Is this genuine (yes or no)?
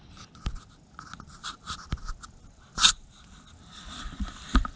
yes